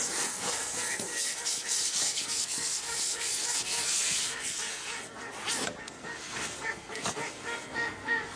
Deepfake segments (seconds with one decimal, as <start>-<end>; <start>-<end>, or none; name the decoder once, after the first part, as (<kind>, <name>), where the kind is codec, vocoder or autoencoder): 0.0-5.3 (codec, SNAC); 5.8-8.4